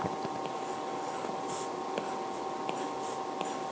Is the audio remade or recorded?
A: recorded